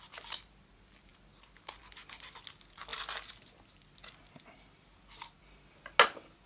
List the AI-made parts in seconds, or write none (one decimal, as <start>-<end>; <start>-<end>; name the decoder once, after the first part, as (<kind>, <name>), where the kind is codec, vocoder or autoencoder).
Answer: none